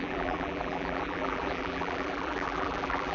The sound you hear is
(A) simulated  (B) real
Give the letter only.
A